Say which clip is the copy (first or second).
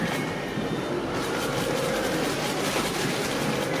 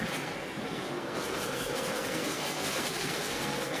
second